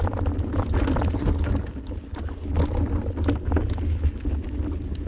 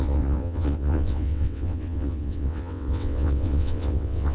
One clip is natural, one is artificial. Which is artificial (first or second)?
second